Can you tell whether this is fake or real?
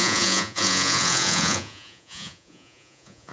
fake